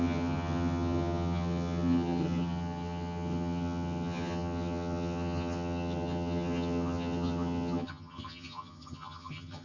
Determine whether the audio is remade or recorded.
remade